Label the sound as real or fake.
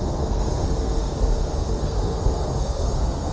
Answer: fake